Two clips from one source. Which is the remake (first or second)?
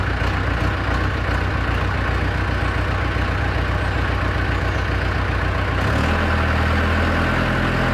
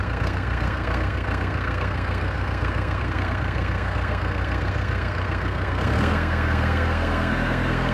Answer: second